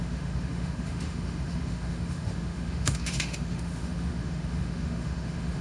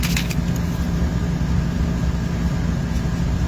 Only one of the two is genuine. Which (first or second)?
second